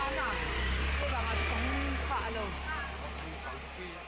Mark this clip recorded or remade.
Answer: recorded